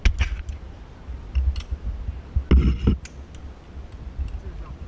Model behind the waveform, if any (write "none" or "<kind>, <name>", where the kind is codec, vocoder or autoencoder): none